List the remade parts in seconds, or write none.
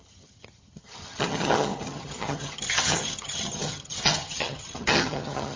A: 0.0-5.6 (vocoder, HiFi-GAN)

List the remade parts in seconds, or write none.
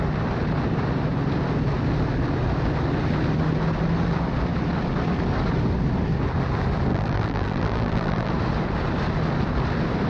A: 6.9-8.3 (vocoder, BigVGAN v2)